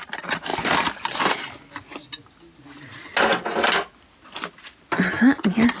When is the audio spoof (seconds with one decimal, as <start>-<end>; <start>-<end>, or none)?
none